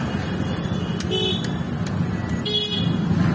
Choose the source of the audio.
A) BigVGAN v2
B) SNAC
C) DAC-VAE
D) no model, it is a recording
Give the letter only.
D